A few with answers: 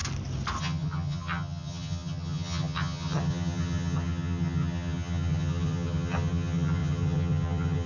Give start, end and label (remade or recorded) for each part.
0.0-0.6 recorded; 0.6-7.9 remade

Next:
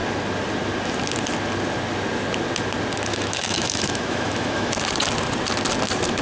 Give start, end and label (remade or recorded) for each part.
0.0-3.1 recorded; 3.1-4.7 remade; 4.7-6.2 recorded

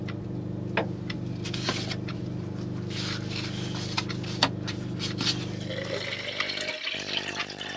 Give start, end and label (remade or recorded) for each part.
0.0-7.8 recorded

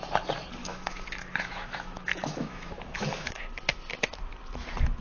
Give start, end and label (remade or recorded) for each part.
0.0-0.6 recorded; 0.6-3.6 remade; 3.6-5.0 recorded